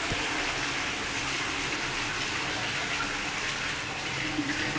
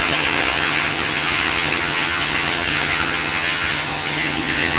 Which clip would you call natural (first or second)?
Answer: first